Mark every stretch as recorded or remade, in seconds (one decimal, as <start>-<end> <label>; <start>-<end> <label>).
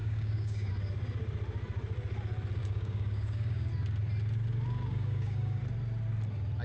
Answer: 0.0-0.7 remade; 0.7-2.6 recorded; 2.6-3.7 remade; 3.7-4.9 recorded; 4.9-5.6 remade; 5.6-6.6 recorded